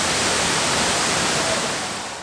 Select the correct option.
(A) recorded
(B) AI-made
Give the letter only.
A